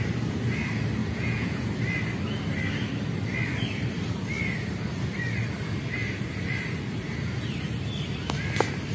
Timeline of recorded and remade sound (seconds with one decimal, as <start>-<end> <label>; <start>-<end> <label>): 0.0-1.0 recorded; 1.0-1.7 remade; 1.7-8.9 recorded